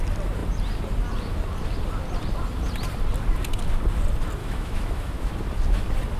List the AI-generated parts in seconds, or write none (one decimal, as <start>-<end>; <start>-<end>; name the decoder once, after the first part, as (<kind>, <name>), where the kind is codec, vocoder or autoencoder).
4.4-5.3 (autoencoder, DAC-VAE)